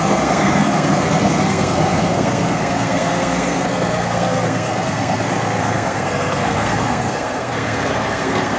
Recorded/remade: remade